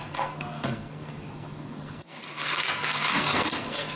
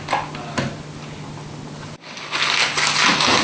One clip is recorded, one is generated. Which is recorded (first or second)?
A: second